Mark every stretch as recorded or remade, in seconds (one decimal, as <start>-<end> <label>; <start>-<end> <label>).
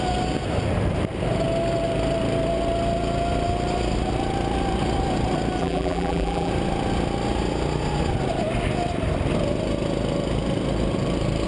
0.0-5.6 recorded; 5.6-6.5 remade; 6.5-11.5 recorded